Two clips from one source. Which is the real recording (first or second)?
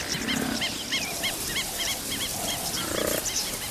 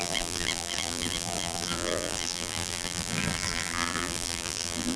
first